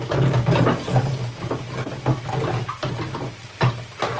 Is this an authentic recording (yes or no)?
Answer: yes